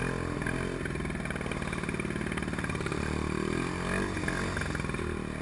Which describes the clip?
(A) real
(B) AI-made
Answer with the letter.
A